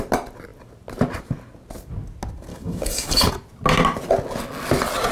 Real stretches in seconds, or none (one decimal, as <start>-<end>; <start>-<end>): 0.0-2.5; 3.3-5.1